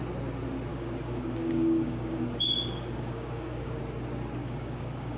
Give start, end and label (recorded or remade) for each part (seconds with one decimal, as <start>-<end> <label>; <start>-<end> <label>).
0.0-0.7 recorded; 0.7-3.8 remade; 3.8-4.4 recorded; 4.4-5.2 remade